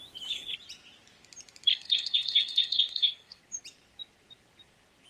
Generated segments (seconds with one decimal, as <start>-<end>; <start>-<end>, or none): 1.7-3.4